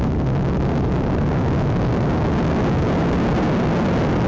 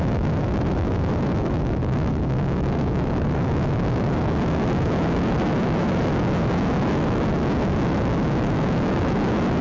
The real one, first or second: first